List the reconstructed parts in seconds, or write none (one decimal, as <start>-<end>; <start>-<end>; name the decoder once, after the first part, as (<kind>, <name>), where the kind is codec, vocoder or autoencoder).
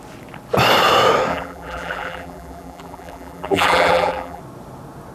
1.3-4.4 (vocoder, BigVGAN v2)